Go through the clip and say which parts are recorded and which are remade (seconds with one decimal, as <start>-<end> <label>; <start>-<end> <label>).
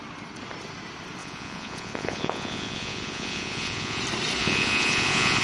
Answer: 0.0-1.2 recorded; 1.2-4.0 remade; 4.0-4.4 recorded; 4.4-5.4 remade